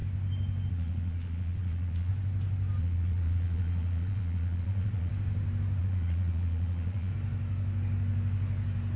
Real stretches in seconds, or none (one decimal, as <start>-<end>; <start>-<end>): 0.0-0.7; 2.1-2.8; 5.1-5.8; 7.1-9.0